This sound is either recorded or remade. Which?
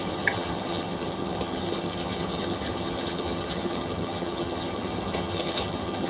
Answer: remade